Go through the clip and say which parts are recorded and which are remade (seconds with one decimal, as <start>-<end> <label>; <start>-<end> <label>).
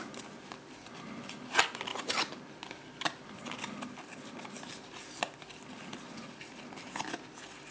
0.0-7.7 recorded